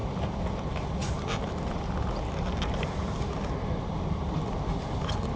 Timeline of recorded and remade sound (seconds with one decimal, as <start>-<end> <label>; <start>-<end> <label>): 0.0-0.6 remade; 0.6-1.0 recorded; 1.0-1.7 remade; 1.7-5.4 recorded